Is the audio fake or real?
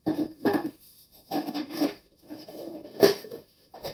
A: fake